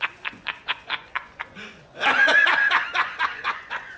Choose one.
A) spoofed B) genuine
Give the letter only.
A